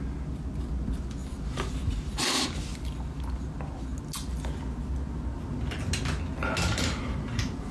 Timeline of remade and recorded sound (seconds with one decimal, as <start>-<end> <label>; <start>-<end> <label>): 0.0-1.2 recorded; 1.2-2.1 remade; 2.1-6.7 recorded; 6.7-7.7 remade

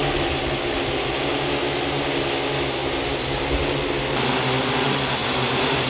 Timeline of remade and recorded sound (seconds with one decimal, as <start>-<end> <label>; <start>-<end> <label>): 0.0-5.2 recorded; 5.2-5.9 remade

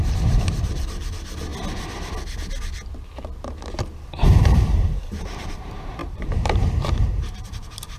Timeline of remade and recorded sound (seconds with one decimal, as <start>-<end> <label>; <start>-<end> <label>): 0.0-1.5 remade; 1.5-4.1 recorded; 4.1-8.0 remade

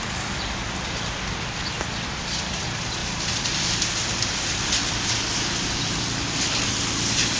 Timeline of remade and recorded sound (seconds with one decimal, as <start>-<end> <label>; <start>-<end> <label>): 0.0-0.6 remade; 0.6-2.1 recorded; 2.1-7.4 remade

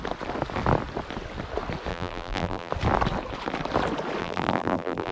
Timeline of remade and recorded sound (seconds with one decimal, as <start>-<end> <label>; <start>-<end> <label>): 0.0-1.9 recorded; 1.9-2.7 remade; 2.7-4.2 recorded; 4.2-5.1 remade

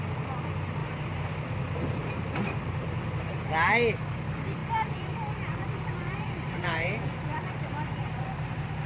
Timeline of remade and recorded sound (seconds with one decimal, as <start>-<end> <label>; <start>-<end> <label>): 0.0-0.8 recorded; 0.8-3.5 remade; 3.5-4.6 recorded; 4.6-7.6 remade; 7.6-8.0 recorded; 8.0-8.9 remade

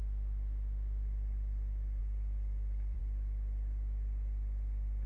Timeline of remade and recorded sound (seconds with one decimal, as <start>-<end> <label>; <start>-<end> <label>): 0.0-2.0 recorded; 2.0-3.0 remade; 3.0-5.1 recorded